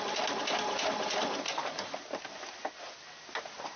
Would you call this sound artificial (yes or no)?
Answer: no